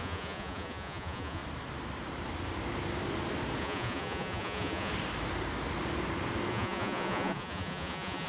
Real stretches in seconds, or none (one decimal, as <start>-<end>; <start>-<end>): 1.4-3.6; 4.9-6.5